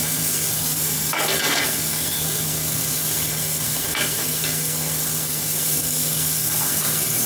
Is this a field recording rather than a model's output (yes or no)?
no